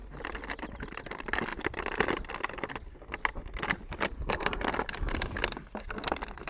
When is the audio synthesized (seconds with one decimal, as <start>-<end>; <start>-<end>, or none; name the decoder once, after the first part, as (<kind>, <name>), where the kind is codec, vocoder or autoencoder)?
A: none